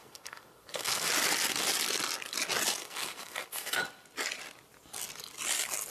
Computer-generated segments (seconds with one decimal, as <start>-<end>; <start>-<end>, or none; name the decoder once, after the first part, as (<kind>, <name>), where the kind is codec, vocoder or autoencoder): 0.0-1.1 (codec, SNAC); 2.8-3.8